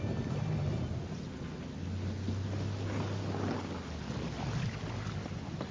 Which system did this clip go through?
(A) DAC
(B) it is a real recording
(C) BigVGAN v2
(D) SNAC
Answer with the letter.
B